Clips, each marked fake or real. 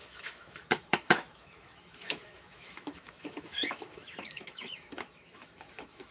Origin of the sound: fake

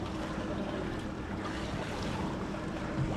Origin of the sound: real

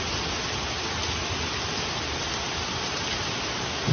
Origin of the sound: real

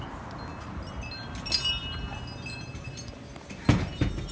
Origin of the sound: real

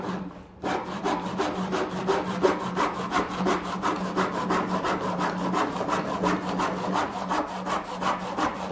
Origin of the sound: real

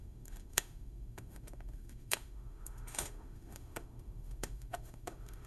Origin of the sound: fake